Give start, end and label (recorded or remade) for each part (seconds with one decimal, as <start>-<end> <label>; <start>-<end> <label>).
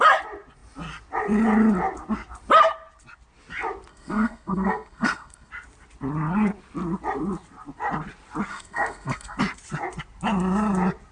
0.0-3.9 recorded; 3.9-5.5 remade; 5.5-8.5 recorded; 8.5-9.4 remade; 9.4-11.1 recorded